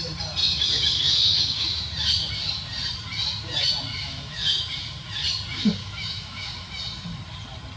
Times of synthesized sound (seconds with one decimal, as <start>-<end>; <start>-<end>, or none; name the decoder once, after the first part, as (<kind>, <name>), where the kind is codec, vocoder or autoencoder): 0.4-1.8 (autoencoder, DAC-VAE); 3.9-4.7; 5.8-6.7